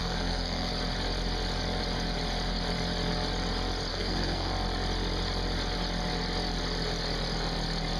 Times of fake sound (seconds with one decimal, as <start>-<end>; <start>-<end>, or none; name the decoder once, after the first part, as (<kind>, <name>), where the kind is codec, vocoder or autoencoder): 0.0-0.7 (codec, SNAC); 3.9-4.5